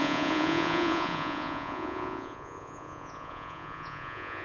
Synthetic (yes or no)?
yes